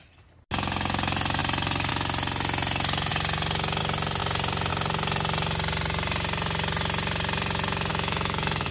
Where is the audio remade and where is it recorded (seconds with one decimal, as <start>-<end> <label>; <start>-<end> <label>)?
0.0-7.9 recorded; 7.9-8.7 remade